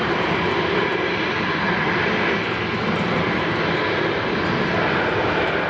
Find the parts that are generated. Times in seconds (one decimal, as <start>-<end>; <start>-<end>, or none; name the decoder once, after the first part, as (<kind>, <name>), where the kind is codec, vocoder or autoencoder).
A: none